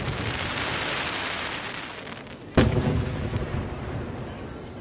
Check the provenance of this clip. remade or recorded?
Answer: recorded